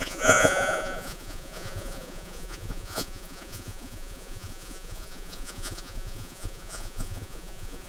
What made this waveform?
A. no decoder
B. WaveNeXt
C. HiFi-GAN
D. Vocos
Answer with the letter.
D